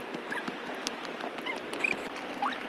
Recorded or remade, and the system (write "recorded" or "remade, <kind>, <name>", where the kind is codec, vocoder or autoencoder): recorded